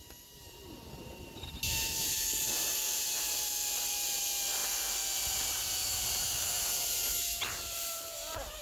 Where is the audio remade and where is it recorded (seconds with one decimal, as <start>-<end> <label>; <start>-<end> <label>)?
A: 0.0-8.6 recorded